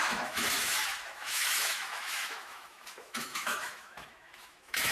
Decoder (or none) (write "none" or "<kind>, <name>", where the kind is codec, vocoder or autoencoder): autoencoder, DAC-VAE